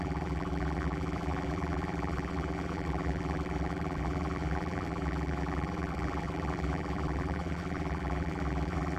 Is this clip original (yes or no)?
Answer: no